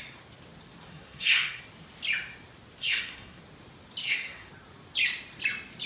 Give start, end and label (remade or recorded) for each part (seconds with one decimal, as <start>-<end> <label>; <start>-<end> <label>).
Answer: 0.0-0.9 recorded; 0.9-1.6 remade; 1.6-2.8 recorded; 2.8-3.4 remade; 3.4-4.0 recorded; 4.0-4.5 remade; 4.5-5.9 recorded